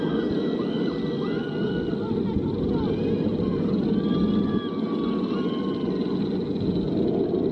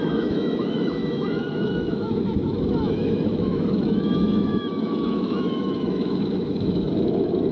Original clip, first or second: first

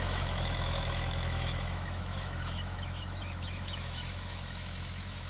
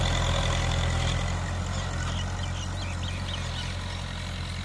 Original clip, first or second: second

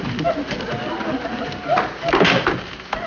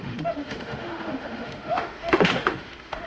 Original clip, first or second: first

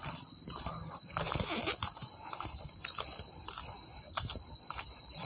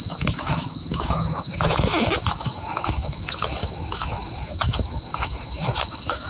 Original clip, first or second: first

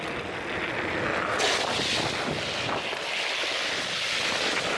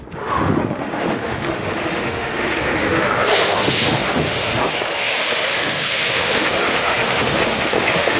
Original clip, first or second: first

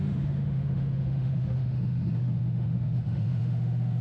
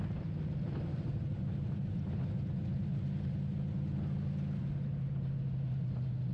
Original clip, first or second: second